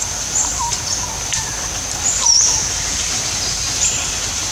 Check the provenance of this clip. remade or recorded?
remade